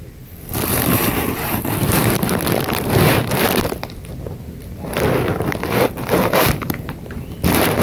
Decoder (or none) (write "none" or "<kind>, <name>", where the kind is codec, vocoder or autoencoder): vocoder, BigVGAN v2